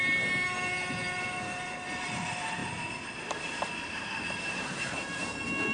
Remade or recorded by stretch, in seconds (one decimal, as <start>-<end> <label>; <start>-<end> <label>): 0.0-2.6 remade; 2.6-3.9 recorded; 3.9-5.2 remade; 5.2-5.7 recorded